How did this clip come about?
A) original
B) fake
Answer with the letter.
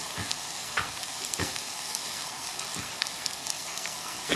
B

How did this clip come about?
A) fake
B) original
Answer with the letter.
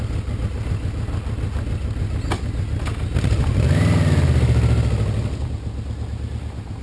B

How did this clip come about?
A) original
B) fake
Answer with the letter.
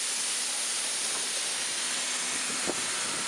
A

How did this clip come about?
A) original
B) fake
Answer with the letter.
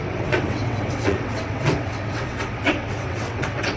B